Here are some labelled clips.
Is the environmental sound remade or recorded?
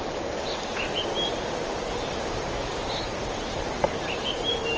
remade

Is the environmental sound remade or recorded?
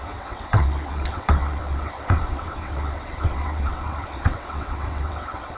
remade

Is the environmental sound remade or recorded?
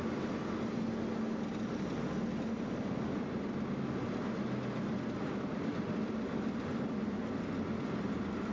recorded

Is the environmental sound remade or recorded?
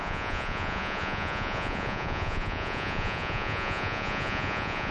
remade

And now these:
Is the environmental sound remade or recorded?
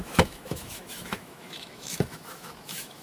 remade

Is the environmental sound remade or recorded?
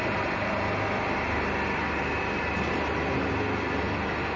recorded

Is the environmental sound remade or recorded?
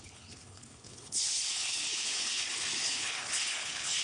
remade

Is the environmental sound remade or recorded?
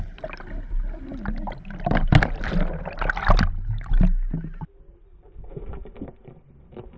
recorded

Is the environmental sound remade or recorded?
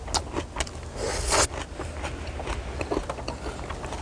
recorded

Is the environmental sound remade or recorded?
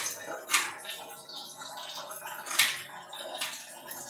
recorded